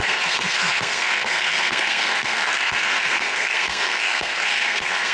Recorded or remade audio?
remade